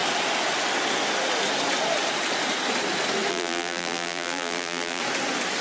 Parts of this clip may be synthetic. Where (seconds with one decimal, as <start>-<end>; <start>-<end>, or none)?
3.3-5.0

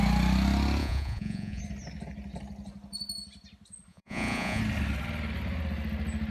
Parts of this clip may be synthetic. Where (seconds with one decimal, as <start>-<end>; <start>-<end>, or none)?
0.8-1.6; 3.9-4.6

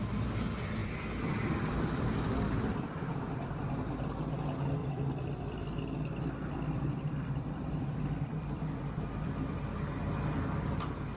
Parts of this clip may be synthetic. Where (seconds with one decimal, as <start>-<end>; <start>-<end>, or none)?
0.8-3.5; 4.8-9.3

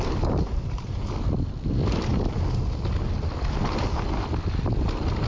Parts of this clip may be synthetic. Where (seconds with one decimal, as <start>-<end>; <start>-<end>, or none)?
none

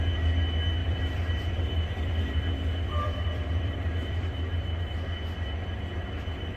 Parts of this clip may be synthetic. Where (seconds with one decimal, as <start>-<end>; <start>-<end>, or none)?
0.8-4.8

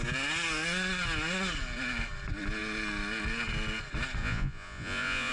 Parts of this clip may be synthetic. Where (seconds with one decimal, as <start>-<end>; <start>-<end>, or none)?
4.2-5.3